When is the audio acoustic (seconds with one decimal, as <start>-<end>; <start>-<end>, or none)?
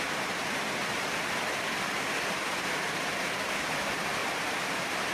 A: 0.0-0.9; 3.5-4.2